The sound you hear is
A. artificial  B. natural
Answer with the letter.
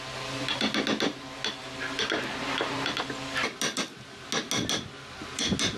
B